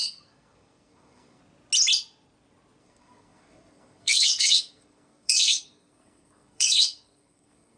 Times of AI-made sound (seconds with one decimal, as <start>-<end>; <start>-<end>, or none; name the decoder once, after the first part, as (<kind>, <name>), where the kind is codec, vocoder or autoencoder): 0.0-1.4 (codec, SNAC); 2.8-7.8